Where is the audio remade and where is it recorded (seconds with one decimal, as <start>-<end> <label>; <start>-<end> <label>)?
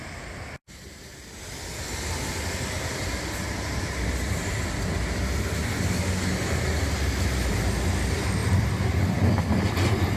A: 0.0-10.2 recorded